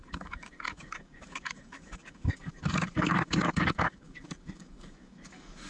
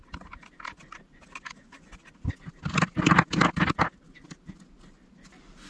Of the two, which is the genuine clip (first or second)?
second